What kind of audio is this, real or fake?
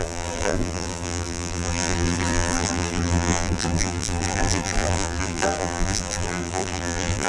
fake